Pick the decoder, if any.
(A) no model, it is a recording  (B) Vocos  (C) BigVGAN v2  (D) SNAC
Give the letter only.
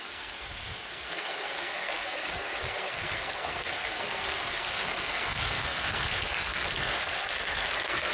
D